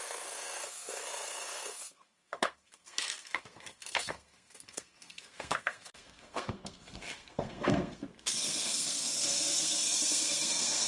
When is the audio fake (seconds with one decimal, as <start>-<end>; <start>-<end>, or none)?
0.0-10.9